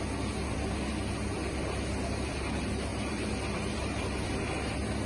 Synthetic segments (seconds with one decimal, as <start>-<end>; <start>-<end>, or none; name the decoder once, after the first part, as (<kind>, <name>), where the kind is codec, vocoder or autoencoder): 2.9-4.4 (vocoder, BigVGAN v2)

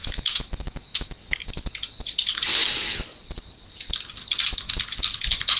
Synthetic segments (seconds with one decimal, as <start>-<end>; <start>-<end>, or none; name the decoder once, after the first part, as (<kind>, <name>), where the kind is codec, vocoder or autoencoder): 0.0-1.3 (autoencoder, DAC-VAE)

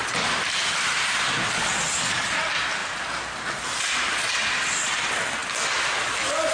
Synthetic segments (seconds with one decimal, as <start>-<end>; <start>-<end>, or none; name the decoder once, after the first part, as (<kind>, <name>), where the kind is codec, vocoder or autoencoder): none

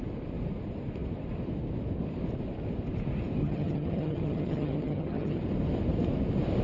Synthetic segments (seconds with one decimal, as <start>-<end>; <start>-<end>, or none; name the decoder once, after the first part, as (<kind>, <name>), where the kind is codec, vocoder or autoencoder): 3.4-5.4 (vocoder, HiFi-GAN)

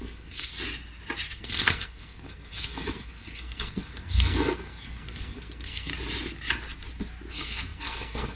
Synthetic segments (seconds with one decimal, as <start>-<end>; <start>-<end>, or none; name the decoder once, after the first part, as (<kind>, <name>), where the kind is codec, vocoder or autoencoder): 0.0-0.5 (codec, SNAC); 1.3-5.9; 7.3-8.4

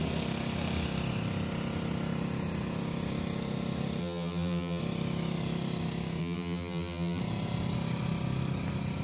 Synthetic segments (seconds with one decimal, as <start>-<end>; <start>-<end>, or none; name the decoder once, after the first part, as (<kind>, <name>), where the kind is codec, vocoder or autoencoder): 4.0-4.8 (vocoder, BigVGAN v2); 6.2-7.2

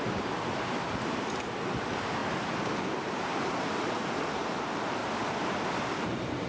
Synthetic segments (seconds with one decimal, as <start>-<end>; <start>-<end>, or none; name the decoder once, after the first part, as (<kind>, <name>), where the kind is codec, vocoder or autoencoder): 0.0-5.0 (vocoder, BigVGAN v2); 6.0-6.5

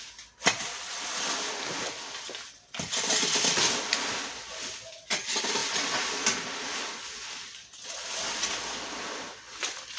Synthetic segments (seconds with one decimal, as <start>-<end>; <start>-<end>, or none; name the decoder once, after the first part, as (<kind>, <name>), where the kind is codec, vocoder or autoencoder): none